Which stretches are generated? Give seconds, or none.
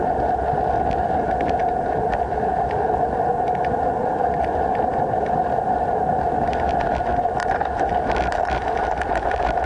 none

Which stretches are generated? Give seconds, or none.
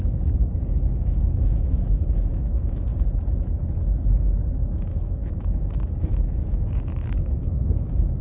0.0-2.9; 4.5-8.2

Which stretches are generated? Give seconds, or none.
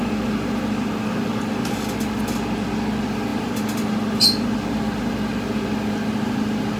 none